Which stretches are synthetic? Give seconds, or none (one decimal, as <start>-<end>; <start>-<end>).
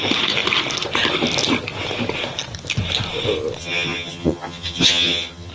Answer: 3.6-5.5